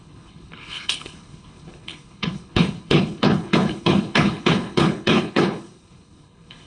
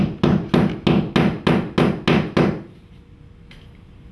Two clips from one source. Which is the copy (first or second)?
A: first